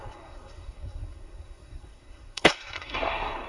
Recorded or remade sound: remade